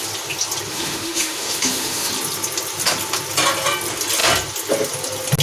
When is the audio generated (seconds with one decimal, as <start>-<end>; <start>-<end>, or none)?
0.7-2.1